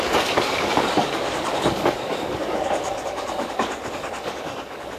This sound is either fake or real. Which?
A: fake